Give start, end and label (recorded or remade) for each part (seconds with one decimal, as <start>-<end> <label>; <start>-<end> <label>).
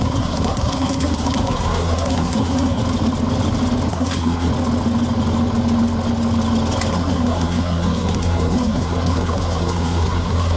0.0-2.8 remade; 2.8-3.9 recorded; 3.9-4.5 remade; 4.5-6.9 recorded; 6.9-10.6 remade